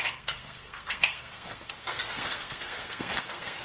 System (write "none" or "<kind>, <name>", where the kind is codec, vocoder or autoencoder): codec, SNAC